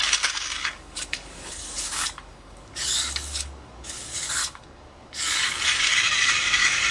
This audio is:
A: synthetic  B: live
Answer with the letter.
A